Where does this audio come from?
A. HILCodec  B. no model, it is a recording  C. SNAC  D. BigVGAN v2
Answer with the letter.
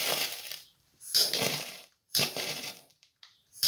D